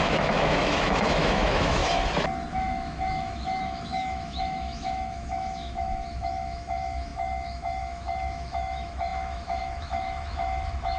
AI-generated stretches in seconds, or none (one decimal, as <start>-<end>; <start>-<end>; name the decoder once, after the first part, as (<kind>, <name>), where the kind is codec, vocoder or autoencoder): 0.0-1.8 (autoencoder, DAC-VAE); 2.5-11.0